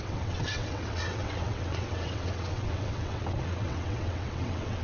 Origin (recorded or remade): remade